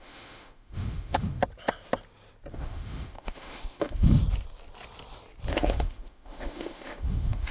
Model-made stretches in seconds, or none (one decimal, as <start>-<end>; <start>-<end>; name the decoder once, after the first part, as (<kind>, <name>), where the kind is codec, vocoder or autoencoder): 0.0-1.4 (autoencoder, DAC-VAE); 2.5-4.2; 5.5-7.5

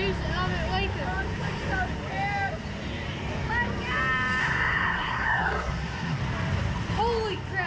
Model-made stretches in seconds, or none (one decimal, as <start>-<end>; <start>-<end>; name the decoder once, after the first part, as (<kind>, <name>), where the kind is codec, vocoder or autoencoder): 4.4-6.2 (codec, SNAC)

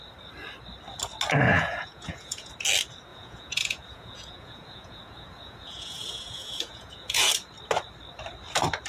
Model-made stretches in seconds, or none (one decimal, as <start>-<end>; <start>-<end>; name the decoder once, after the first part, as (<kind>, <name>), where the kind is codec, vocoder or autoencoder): 1.5-2.5 (vocoder, Vocos); 3.1-7.3

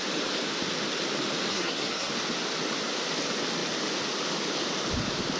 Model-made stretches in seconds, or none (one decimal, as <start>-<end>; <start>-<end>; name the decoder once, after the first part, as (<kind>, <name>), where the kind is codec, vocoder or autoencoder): 1.5-2.1 (codec, SNAC)

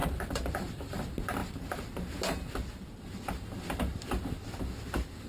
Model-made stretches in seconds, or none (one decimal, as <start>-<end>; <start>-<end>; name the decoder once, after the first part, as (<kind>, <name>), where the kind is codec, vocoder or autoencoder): none